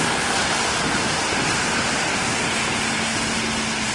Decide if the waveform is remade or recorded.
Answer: recorded